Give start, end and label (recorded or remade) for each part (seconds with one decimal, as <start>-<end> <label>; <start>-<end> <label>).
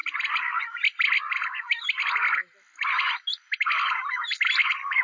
0.0-5.0 recorded